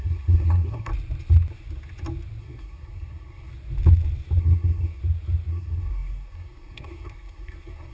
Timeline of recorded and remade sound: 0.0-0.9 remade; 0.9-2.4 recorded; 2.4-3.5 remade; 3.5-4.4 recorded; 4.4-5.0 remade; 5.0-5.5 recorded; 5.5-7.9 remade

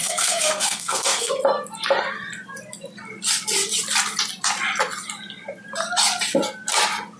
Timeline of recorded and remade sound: 0.0-1.3 remade; 1.3-7.2 recorded

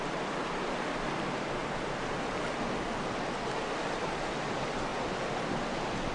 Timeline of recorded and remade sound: 0.0-6.1 recorded

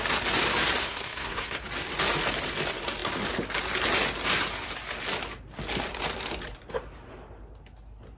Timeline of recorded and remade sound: 0.0-0.8 recorded; 0.8-1.6 remade; 1.6-8.2 recorded